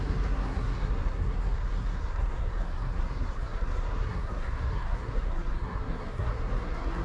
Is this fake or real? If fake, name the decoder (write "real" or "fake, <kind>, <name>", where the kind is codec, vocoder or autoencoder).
fake, codec, SNAC